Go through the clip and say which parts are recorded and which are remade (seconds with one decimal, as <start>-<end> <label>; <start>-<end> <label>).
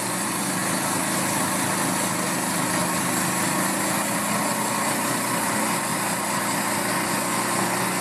0.0-0.6 remade; 0.6-5.4 recorded; 5.4-5.9 remade; 5.9-6.9 recorded; 6.9-8.0 remade